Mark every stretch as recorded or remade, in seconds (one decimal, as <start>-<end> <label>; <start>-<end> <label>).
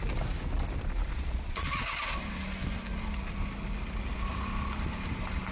0.0-1.1 recorded; 1.1-1.7 remade; 1.7-5.5 recorded